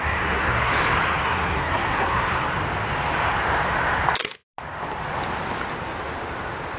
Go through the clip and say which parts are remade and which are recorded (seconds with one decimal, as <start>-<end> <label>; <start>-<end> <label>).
0.0-0.7 remade; 0.7-1.2 recorded; 1.2-2.3 remade; 2.3-6.8 recorded